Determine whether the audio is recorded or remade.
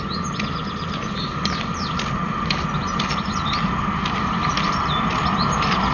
recorded